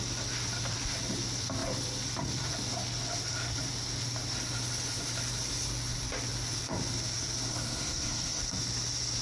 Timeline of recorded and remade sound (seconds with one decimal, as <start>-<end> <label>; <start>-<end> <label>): 0.0-7.5 recorded; 7.5-8.4 remade; 8.4-9.2 recorded